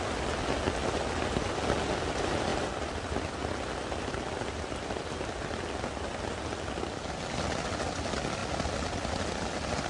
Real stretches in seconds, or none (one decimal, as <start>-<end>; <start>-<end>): 0.0-9.9